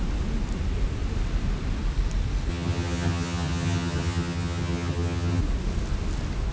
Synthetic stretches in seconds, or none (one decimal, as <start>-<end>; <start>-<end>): 2.5-5.4